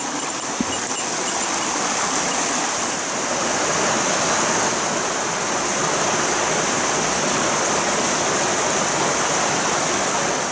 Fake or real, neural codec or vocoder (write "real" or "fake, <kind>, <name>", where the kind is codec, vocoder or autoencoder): real